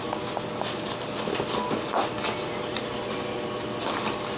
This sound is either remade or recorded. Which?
recorded